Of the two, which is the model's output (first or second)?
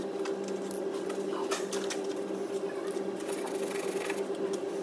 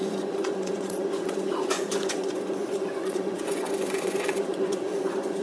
second